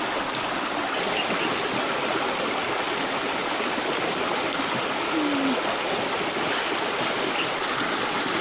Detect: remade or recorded recorded